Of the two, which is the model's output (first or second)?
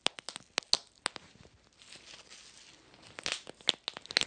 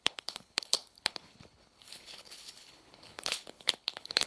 second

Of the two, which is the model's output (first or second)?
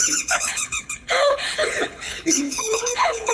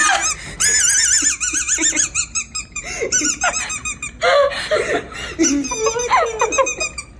first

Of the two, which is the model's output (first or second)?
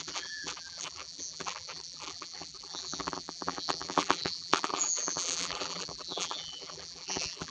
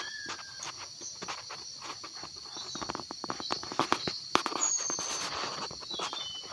first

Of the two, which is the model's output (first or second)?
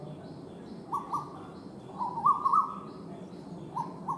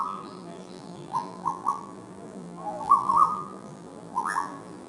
second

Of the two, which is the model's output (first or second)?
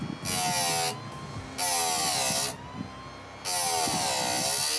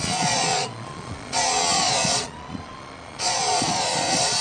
second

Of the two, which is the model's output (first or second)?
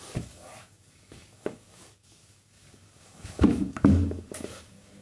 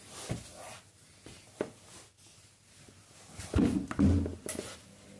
first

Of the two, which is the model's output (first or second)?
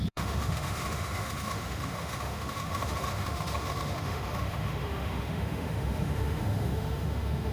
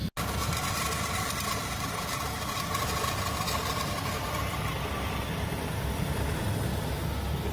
first